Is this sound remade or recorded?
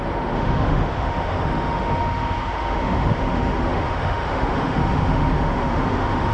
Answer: remade